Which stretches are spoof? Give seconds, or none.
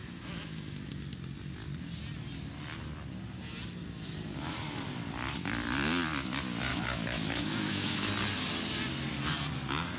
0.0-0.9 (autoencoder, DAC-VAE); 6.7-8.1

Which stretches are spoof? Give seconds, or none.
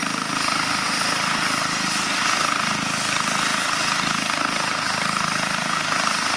none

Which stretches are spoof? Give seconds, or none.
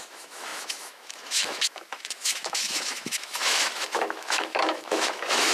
0.0-5.5 (autoencoder, DAC-VAE)